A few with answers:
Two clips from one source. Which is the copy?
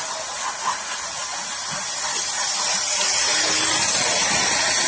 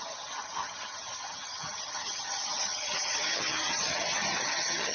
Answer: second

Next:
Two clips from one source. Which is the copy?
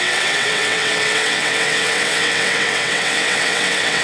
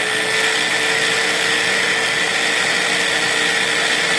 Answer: first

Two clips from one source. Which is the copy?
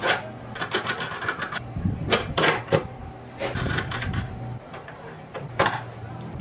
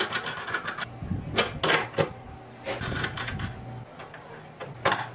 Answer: first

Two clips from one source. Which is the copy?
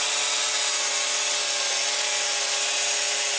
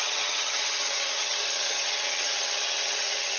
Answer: second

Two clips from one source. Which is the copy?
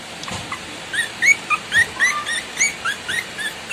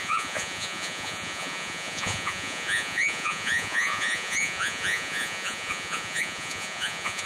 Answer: second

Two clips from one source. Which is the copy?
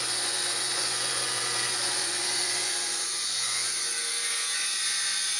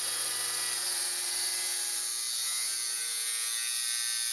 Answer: first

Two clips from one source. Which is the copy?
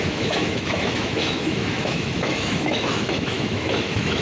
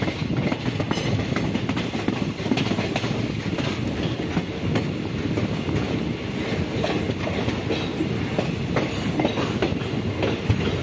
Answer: first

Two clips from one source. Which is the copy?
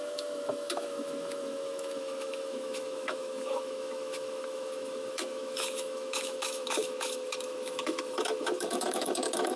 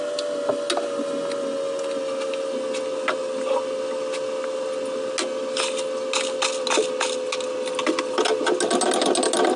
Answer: first